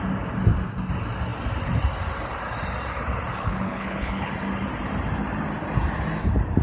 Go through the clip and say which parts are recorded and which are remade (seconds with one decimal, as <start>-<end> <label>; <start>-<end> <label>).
0.0-3.3 recorded; 3.3-4.3 remade; 4.3-6.6 recorded